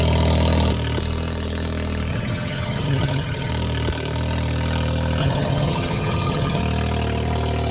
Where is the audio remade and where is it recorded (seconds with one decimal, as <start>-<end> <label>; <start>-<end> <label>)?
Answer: 0.0-2.1 recorded; 2.1-3.5 remade; 3.5-5.2 recorded; 5.2-6.6 remade; 6.6-7.7 recorded